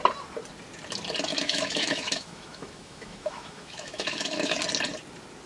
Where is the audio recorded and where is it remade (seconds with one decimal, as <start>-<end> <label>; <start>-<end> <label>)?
0.0-1.3 recorded; 1.3-4.6 remade; 4.6-5.5 recorded